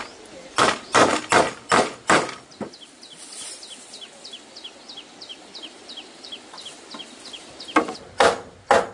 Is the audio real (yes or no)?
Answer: yes